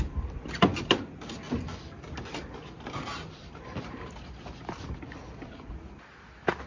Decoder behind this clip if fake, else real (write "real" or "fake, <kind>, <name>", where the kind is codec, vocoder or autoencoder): real